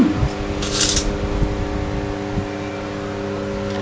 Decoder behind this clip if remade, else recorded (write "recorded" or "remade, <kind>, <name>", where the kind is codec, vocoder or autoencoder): recorded